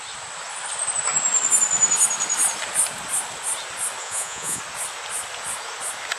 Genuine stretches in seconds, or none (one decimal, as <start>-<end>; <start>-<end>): 0.0-4.0; 4.6-6.2